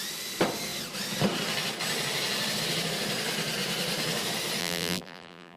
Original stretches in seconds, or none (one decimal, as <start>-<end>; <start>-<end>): 0.0-4.6